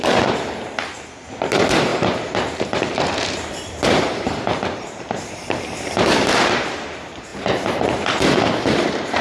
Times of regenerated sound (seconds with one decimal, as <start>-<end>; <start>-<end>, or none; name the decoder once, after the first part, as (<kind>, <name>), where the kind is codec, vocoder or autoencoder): 0.0-9.2 (vocoder, BigVGAN v2)